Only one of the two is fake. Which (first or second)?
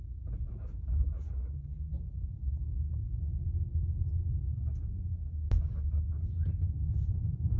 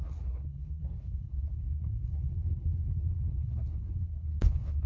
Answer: second